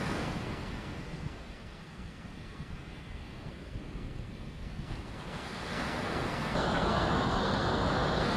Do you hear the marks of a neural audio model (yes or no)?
yes